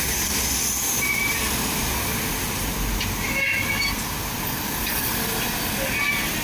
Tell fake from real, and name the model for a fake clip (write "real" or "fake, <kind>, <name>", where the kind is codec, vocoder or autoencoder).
real